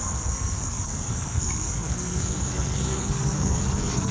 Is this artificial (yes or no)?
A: yes